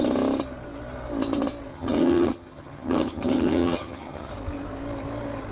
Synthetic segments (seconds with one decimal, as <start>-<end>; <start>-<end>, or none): 1.7-4.3